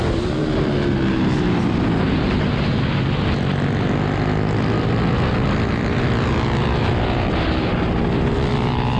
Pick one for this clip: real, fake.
real